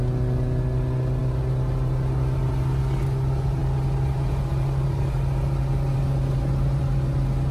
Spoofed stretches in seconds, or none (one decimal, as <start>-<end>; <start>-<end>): none